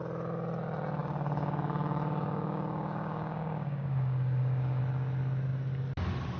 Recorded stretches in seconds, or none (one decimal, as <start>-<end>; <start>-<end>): 0.0-1.0; 4.8-6.4